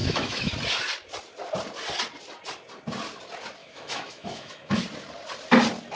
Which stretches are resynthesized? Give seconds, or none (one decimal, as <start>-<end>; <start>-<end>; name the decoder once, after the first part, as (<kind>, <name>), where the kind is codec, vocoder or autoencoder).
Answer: 0.0-0.5 (autoencoder, DAC-VAE); 3.6-4.8